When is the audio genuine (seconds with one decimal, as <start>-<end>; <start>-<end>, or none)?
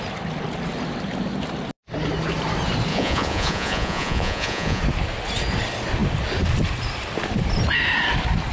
0.0-2.9; 4.8-8.5